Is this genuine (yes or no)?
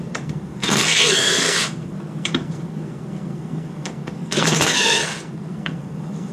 no